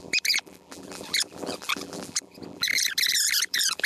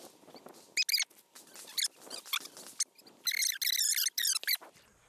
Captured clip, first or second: second